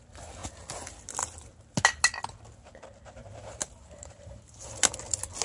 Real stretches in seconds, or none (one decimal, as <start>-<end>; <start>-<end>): 0.0-3.2; 4.7-5.4

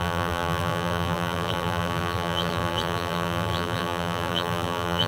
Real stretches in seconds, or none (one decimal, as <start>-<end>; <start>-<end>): none

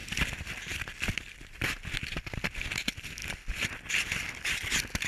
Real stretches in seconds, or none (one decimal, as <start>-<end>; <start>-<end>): 1.9-5.1

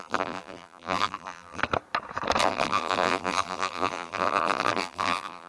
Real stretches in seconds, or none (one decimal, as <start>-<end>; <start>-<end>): 1.6-2.4

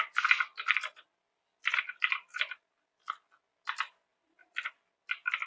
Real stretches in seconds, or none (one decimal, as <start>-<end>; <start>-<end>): 0.0-1.6; 2.9-4.1; 4.7-5.5

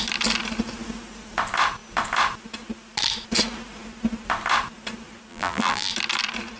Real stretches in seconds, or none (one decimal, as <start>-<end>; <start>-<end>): 0.0-5.3; 5.9-6.6

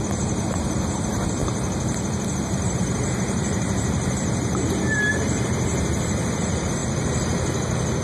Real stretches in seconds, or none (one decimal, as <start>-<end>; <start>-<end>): 1.4-2.3; 6.8-8.0